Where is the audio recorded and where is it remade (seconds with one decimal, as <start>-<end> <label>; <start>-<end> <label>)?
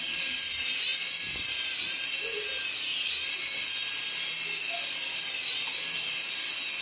0.0-6.8 recorded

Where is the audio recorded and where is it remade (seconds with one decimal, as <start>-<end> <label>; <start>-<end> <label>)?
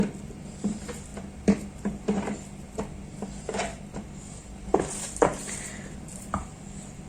0.0-4.7 recorded; 4.7-6.6 remade; 6.6-7.1 recorded